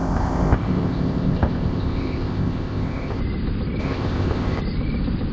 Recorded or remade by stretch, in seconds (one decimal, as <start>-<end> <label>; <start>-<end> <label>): 0.0-3.2 remade; 3.2-3.8 recorded; 3.8-4.6 remade; 4.6-5.3 recorded

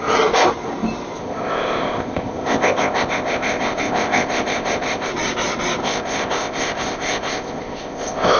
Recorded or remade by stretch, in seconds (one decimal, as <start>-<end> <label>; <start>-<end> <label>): 0.0-1.2 recorded; 1.2-5.1 remade; 5.1-5.8 recorded; 5.8-8.4 remade